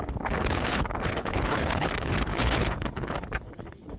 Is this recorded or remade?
remade